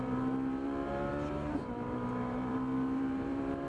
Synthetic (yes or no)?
yes